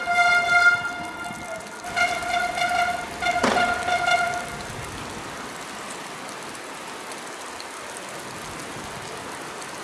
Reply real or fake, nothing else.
real